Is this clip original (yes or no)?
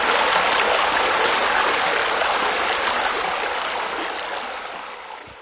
yes